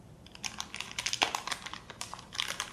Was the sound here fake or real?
real